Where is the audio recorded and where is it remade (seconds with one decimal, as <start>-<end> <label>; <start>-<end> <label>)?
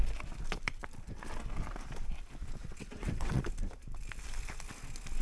0.0-2.6 recorded; 2.6-3.4 remade; 3.4-5.2 recorded